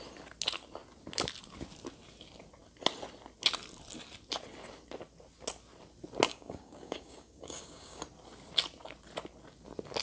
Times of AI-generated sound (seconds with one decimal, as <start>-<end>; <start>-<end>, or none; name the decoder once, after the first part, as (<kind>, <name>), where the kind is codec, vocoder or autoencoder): 6.3-8.0 (codec, DAC)